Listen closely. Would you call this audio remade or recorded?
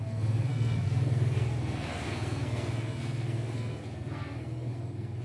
remade